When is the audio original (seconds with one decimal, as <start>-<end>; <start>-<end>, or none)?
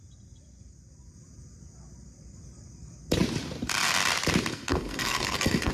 0.0-4.5